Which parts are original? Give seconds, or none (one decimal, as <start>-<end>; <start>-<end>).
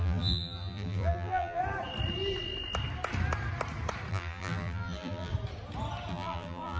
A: 1.6-4.1; 5.3-6.1